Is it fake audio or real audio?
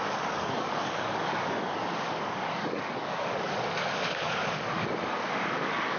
fake